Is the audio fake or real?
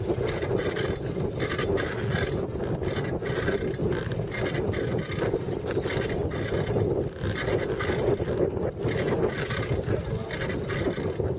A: real